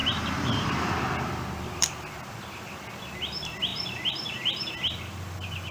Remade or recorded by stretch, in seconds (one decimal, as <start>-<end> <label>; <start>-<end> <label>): 0.0-0.7 remade; 0.7-3.7 recorded; 3.7-4.7 remade; 4.7-5.7 recorded